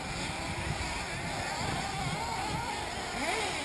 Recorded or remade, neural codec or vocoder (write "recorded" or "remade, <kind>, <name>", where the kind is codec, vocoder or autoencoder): recorded